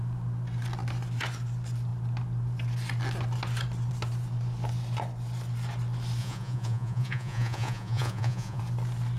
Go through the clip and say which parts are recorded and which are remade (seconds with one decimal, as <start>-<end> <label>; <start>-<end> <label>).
0.0-6.2 recorded; 6.2-8.6 remade; 8.6-9.2 recorded